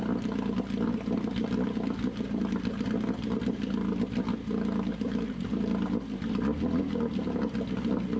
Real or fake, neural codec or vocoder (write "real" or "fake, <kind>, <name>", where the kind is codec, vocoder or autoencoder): real